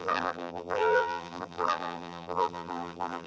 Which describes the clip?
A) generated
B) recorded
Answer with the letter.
A